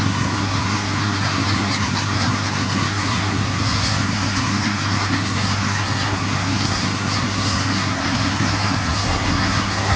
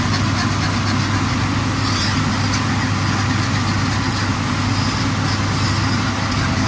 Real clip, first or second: second